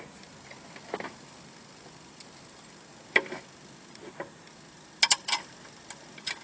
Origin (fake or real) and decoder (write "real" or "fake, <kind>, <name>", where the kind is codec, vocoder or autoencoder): real